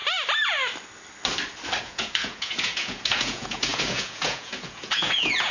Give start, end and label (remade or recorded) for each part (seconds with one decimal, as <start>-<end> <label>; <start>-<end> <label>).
0.0-1.8 recorded; 1.8-5.5 remade